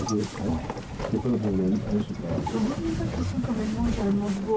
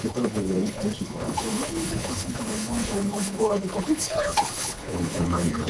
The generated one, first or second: second